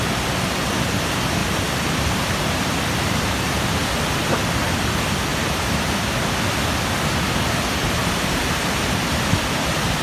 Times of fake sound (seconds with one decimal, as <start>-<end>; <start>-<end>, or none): 1.4-3.9; 5.3-6.4; 8.0-8.5